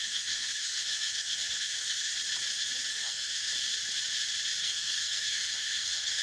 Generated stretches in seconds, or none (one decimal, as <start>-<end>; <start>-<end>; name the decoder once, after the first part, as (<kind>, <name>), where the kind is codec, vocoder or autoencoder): 0.0-2.1 (codec, SNAC); 2.9-3.5; 4.6-6.2